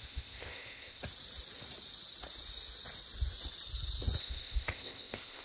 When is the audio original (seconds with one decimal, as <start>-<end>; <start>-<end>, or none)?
1.0-4.2